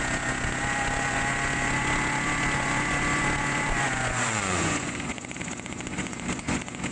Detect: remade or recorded remade